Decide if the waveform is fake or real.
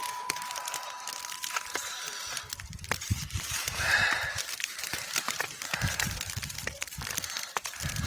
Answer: fake